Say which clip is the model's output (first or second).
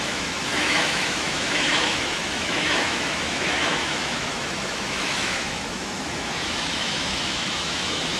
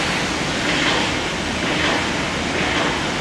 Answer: first